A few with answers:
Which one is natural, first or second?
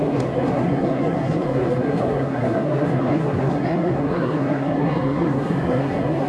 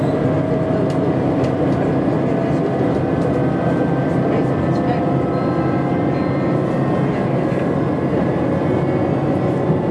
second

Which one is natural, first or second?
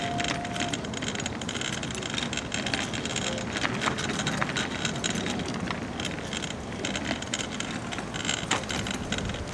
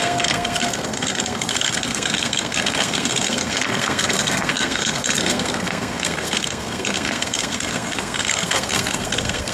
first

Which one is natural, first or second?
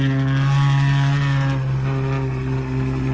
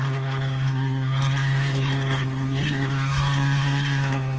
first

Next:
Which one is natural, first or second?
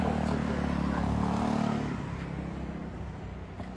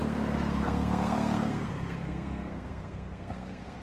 first